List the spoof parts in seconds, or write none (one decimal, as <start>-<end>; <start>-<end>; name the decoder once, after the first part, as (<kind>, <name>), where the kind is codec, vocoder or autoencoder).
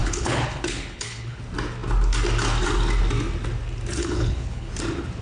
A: 0.0-1.4 (codec, HILCodec); 4.0-4.7